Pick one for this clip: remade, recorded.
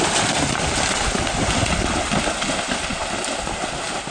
recorded